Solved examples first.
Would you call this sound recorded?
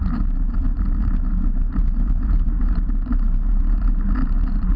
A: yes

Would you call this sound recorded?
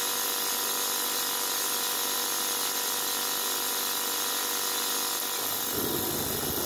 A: yes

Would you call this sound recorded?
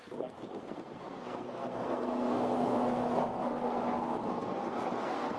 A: no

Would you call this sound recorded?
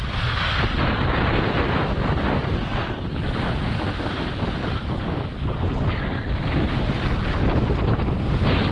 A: yes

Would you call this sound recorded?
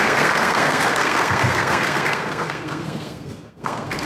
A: no